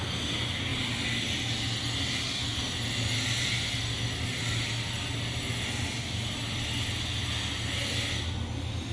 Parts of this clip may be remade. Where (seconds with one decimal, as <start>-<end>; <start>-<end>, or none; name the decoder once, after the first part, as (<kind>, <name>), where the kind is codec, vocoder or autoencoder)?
none

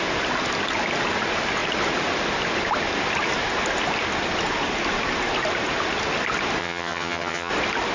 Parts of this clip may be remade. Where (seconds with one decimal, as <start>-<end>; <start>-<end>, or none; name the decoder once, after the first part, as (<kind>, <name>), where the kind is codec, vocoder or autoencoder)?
6.6-7.5 (vocoder, HiFi-GAN)

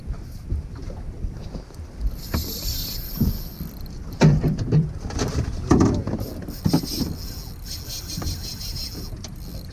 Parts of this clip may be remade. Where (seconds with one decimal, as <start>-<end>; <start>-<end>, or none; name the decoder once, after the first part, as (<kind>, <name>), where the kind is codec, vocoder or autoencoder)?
0.8-6.0 (vocoder, BigVGAN v2)

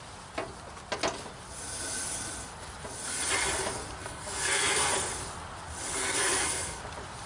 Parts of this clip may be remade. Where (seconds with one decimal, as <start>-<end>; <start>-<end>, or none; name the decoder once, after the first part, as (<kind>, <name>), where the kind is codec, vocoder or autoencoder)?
4.0-4.9 (codec, SNAC); 6.0-6.8